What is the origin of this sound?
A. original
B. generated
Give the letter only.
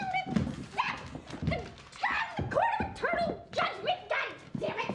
A